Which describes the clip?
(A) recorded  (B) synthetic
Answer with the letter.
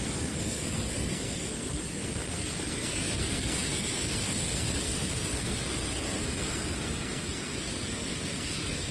B